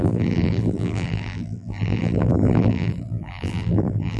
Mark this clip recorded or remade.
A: remade